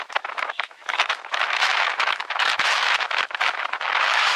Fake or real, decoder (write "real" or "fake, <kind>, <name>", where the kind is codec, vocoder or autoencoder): fake, autoencoder, DAC-VAE